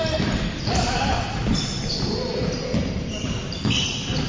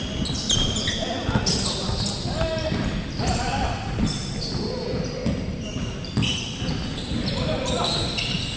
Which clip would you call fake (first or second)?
first